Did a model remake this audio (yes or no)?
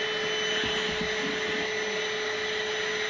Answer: no